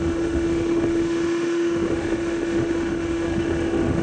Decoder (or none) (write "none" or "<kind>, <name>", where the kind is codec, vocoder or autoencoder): autoencoder, DAC-VAE